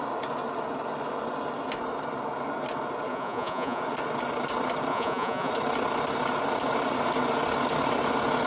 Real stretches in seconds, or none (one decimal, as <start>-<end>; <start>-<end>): 0.0-3.1; 3.8-4.9; 5.5-8.5